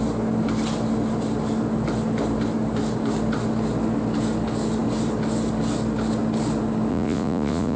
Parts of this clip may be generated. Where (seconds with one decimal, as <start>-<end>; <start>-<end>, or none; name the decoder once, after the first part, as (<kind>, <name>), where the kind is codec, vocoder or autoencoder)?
6.9-7.8 (vocoder, Vocos)